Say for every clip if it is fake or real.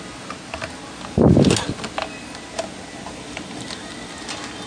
real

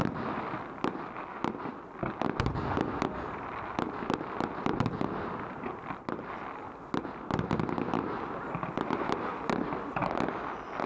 real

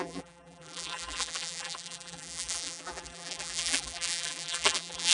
fake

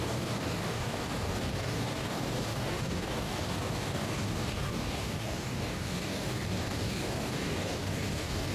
fake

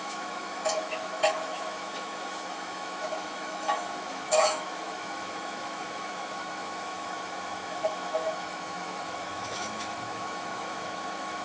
fake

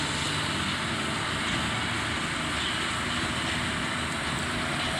real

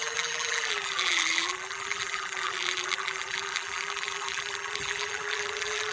fake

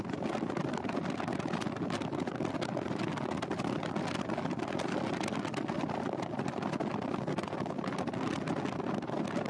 real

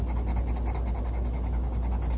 real